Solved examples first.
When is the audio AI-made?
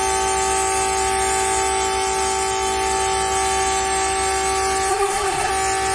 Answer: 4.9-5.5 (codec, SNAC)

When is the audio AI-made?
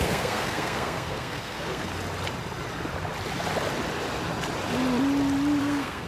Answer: 0.0-1.9 (codec, SNAC); 5.6-6.1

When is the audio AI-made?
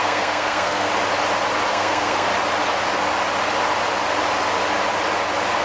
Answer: 0.0-0.9 (codec, SNAC); 1.7-2.3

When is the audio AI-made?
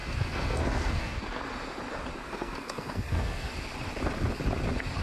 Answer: 0.0-1.2 (codec, SNAC); 2.2-3.5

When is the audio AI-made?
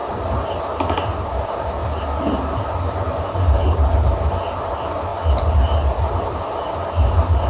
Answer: none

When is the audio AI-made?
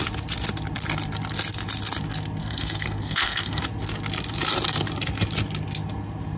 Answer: 2.4-3.6 (codec, SNAC)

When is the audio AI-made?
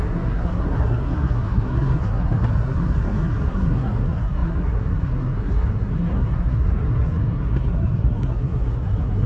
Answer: 0.0-9.3 (codec, SNAC)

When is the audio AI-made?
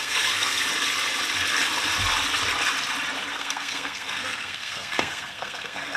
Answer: 0.0-0.6 (codec, SNAC); 3.3-6.0